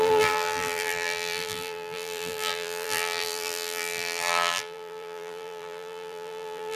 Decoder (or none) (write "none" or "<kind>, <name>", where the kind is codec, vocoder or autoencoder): vocoder, BigVGAN v2